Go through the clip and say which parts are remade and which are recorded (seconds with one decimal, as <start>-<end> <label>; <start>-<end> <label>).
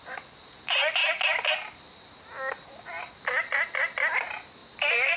0.0-5.2 recorded